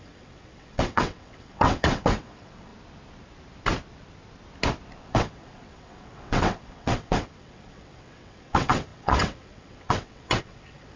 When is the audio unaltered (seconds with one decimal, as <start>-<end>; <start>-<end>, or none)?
2.7-5.0